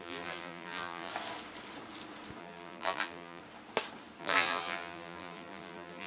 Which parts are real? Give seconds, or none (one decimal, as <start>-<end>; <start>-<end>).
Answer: 1.1-2.4; 3.4-4.2